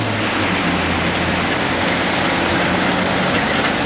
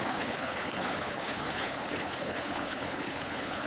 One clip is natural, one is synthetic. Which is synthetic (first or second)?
second